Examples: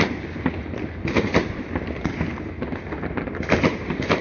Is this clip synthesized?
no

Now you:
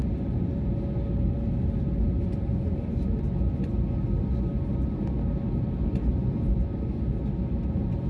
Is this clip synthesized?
no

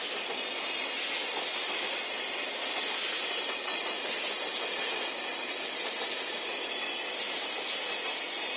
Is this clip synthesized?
no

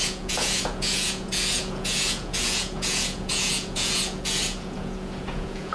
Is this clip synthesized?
yes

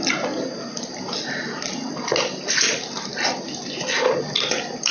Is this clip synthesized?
no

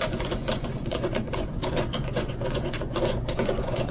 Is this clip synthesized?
yes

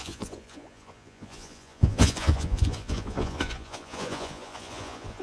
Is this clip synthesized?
yes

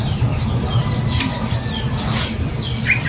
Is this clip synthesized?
no